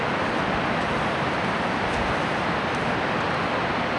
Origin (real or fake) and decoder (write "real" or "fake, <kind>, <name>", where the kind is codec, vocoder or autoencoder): real